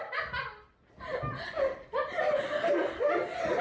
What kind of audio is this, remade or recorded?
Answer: recorded